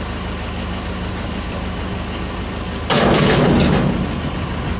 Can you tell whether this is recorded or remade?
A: recorded